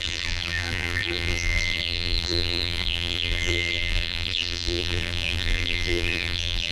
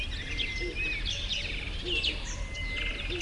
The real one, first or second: second